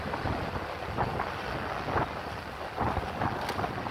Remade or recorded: recorded